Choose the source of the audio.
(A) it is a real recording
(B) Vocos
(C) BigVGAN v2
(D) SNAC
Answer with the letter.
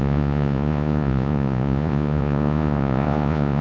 B